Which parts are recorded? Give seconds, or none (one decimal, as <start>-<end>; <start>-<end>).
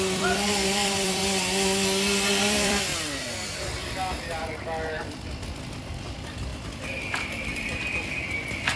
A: 1.2-2.4; 2.9-5.6